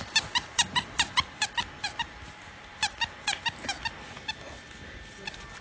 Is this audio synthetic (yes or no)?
no